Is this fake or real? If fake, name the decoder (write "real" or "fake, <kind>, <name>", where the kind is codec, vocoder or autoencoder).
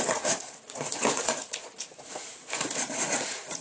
fake, vocoder, Vocos